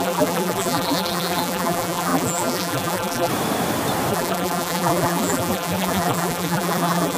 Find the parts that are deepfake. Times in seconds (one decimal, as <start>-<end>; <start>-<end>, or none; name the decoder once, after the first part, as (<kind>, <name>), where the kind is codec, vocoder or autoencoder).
0.0-3.3 (vocoder, BigVGAN v2); 4.1-7.2